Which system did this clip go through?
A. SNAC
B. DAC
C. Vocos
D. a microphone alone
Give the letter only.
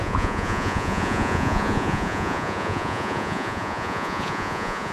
C